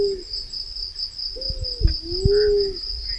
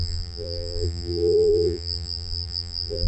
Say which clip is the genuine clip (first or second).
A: first